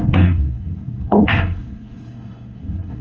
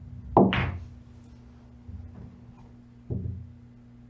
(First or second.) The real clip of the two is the second